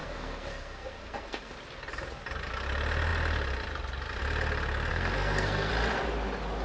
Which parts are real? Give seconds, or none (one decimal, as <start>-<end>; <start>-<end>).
1.5-4.9; 5.7-6.6